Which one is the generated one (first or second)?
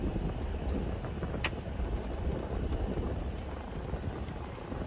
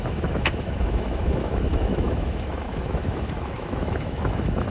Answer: second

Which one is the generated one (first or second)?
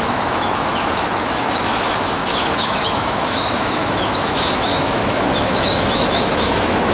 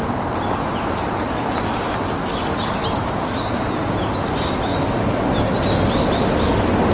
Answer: first